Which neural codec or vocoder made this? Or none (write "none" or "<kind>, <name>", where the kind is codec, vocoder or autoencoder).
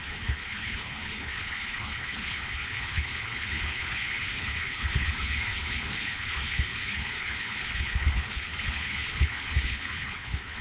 codec, HILCodec